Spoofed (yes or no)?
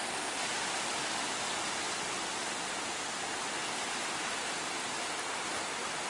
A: no